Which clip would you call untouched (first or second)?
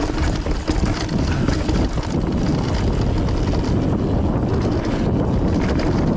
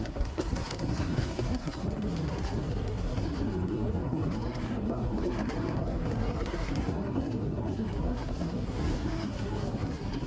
first